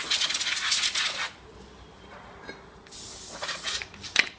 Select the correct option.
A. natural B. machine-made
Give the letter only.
A